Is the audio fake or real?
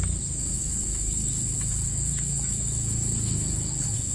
fake